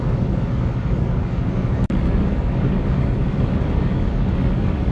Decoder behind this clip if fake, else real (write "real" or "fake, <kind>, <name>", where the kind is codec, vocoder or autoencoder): fake, codec, DAC